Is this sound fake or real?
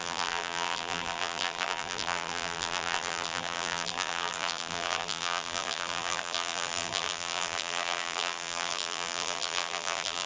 fake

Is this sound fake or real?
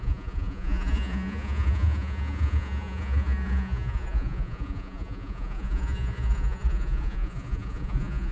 fake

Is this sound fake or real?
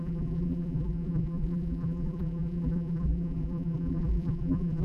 fake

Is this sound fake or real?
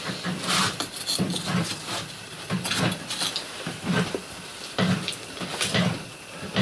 real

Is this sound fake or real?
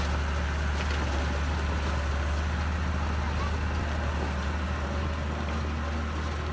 real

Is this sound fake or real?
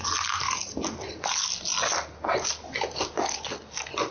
real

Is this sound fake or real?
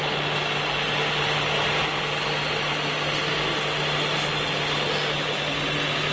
real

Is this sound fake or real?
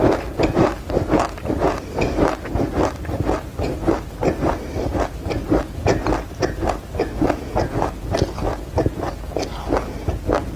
real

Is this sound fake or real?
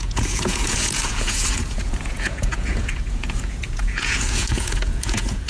fake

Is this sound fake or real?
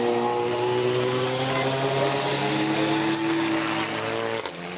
real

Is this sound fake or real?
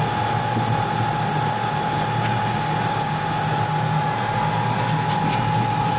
real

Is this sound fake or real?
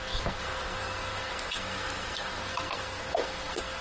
fake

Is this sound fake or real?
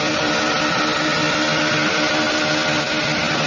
real